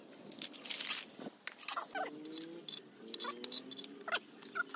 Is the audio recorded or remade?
recorded